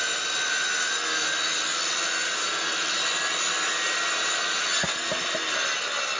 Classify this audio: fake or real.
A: real